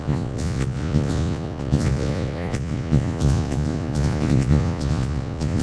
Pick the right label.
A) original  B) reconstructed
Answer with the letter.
B